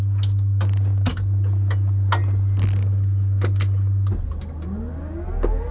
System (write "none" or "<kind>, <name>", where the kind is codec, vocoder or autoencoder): none